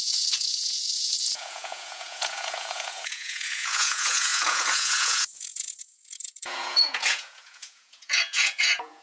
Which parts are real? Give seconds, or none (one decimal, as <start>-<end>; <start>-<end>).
none